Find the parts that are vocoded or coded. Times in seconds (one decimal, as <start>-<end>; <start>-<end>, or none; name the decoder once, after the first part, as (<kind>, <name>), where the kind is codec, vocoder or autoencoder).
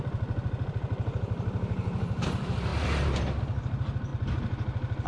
0.0-2.7 (vocoder, BigVGAN v2); 3.4-4.1